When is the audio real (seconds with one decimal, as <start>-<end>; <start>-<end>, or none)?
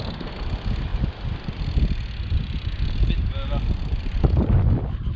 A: 0.0-5.2